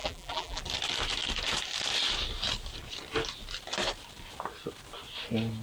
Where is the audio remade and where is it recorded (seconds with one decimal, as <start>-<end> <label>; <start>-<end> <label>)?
0.0-0.6 remade; 0.6-5.6 recorded